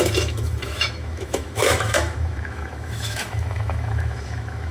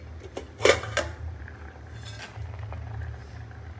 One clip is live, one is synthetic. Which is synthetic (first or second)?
first